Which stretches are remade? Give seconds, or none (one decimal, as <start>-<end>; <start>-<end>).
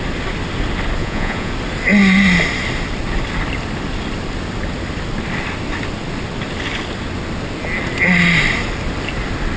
1.0-1.5